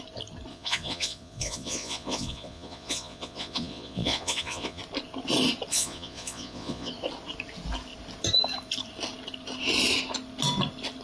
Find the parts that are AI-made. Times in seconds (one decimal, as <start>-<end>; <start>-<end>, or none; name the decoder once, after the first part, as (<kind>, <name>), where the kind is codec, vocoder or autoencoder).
0.5-4.8 (vocoder, Vocos); 5.7-6.9